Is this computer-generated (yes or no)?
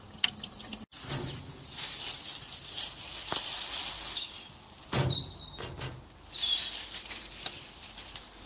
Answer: no